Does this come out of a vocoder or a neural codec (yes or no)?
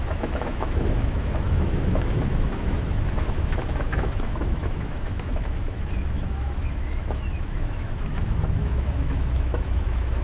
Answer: yes